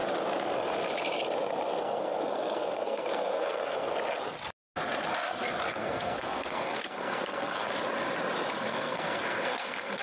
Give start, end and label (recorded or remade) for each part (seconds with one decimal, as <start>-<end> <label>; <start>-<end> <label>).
0.0-1.8 recorded; 1.8-3.9 remade; 3.9-5.7 recorded; 5.7-7.7 remade; 7.7-8.5 recorded; 8.5-10.0 remade